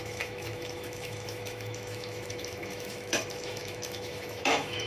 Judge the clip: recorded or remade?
remade